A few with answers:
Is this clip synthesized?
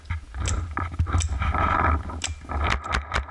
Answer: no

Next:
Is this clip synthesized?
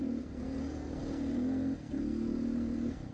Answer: yes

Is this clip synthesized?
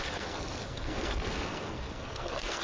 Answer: yes